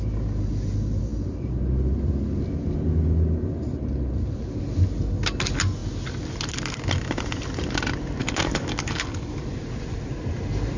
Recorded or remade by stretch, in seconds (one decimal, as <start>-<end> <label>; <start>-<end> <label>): 0.0-8.2 recorded; 8.2-9.4 remade; 9.4-10.8 recorded